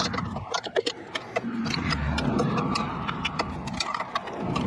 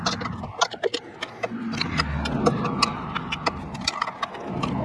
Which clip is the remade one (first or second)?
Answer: first